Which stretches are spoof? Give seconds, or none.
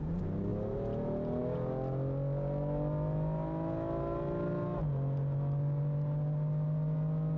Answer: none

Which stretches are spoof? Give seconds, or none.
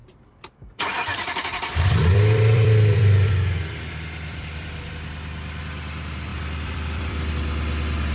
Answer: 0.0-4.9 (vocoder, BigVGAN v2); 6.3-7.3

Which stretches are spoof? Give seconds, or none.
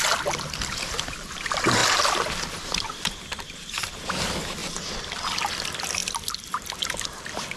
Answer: 6.0-6.7 (vocoder, BigVGAN v2)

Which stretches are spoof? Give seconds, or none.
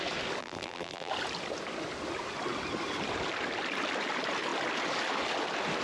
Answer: 0.4-1.1 (vocoder, BigVGAN v2)